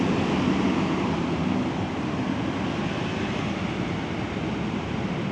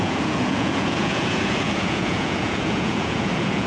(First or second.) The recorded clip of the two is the first